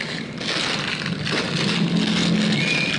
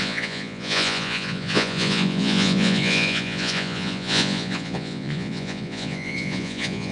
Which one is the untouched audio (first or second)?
first